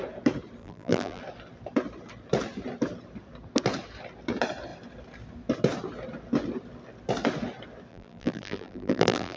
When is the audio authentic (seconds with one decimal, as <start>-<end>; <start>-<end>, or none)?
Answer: 0.0-0.6; 1.2-7.9